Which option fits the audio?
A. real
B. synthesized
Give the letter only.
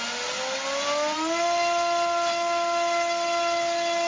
A